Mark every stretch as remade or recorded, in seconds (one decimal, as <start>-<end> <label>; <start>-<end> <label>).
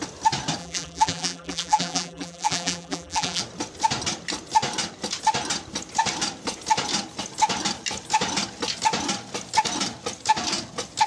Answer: 0.0-0.6 recorded; 0.6-3.4 remade; 3.4-11.1 recorded